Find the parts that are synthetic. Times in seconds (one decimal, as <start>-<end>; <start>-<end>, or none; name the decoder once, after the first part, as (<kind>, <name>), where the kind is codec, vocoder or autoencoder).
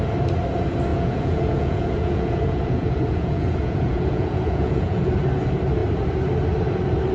0.9-5.1 (vocoder, Vocos)